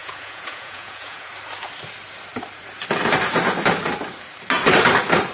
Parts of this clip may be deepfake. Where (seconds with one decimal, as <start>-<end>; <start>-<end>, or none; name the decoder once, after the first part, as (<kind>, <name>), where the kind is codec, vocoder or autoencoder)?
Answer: 0.0-1.3 (vocoder, Vocos)